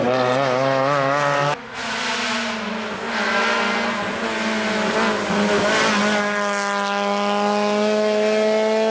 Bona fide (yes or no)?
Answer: yes